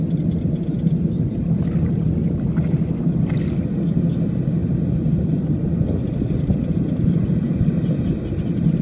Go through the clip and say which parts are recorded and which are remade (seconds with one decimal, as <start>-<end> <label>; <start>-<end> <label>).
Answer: 0.0-8.8 recorded